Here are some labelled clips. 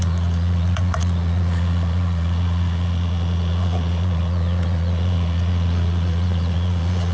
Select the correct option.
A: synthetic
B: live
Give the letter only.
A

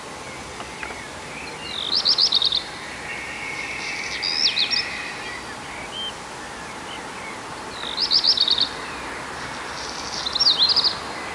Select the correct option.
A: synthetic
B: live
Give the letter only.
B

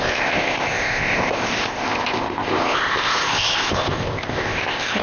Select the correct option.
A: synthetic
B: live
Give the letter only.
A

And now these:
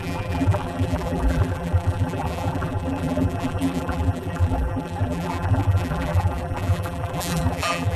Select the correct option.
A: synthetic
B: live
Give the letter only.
A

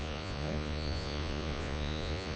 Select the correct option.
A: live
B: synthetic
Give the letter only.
B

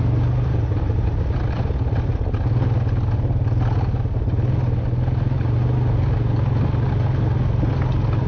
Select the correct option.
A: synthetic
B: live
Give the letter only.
B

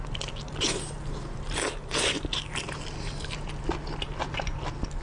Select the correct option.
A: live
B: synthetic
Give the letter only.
A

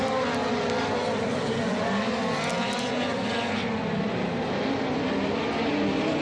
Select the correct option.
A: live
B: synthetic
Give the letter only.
A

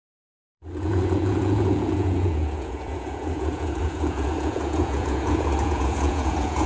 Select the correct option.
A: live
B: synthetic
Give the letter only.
B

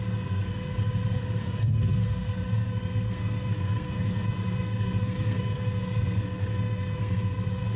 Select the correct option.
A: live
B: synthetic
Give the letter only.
B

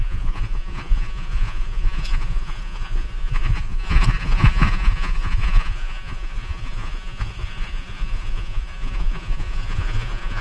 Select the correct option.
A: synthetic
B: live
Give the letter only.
A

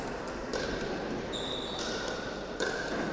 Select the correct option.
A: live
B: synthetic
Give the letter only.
B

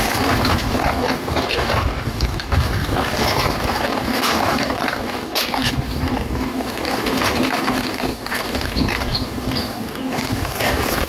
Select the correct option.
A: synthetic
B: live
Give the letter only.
A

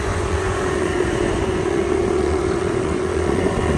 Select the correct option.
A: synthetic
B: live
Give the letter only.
A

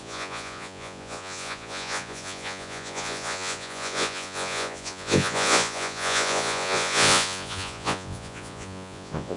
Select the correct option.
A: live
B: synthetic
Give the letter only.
B